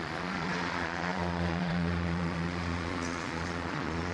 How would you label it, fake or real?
fake